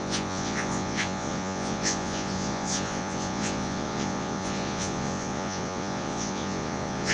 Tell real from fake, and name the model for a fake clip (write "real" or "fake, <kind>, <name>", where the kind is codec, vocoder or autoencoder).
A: fake, vocoder, Vocos